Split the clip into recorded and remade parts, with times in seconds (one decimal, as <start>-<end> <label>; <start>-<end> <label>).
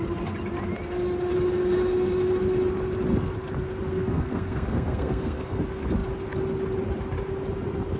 0.0-3.9 recorded; 3.9-5.6 remade; 5.6-8.0 recorded